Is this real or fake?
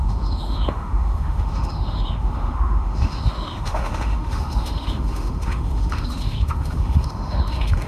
fake